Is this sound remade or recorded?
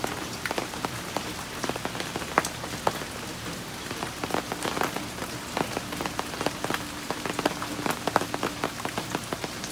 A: recorded